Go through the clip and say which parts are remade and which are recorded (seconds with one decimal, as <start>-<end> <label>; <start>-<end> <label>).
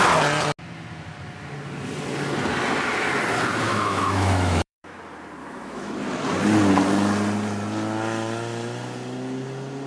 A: 0.0-3.7 recorded; 3.7-5.0 remade; 5.0-5.4 recorded; 5.4-5.9 remade; 5.9-9.9 recorded